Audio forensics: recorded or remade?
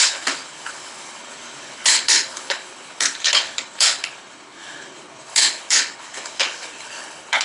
remade